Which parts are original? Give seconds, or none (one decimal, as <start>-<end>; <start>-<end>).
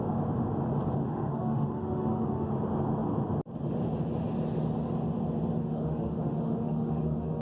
0.0-1.0; 2.5-5.6